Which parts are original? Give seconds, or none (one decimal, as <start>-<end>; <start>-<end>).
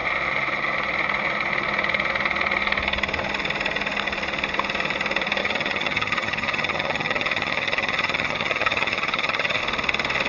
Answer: 0.0-5.4; 9.6-10.3